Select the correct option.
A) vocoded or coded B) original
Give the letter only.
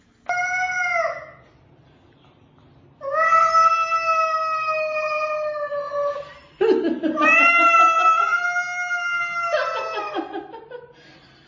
B